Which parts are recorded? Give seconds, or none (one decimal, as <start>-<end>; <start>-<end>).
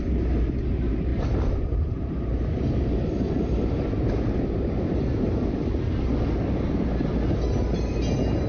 5.6-8.5